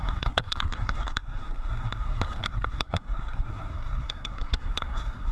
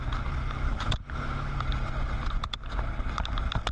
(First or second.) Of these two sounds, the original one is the second